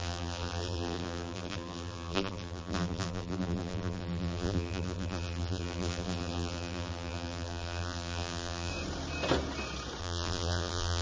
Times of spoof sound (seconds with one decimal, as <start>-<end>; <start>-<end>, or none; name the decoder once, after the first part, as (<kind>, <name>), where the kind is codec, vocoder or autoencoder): 0.0-8.7 (vocoder, BigVGAN v2); 10.0-11.0